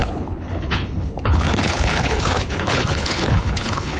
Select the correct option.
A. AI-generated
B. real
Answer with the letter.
A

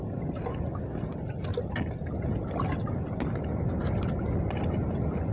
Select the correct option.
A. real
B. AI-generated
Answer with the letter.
A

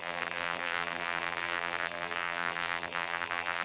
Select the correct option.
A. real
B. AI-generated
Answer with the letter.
B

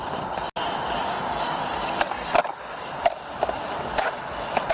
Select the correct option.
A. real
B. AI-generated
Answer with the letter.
A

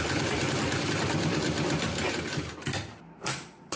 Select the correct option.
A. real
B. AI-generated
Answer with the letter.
A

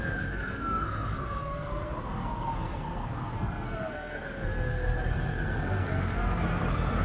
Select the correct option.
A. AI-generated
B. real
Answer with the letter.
A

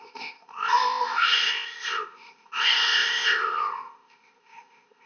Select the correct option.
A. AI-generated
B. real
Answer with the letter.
A